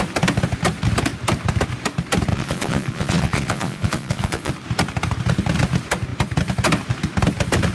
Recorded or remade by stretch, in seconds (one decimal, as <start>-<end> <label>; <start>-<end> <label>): 0.0-2.3 recorded; 2.3-4.5 remade; 4.5-7.7 recorded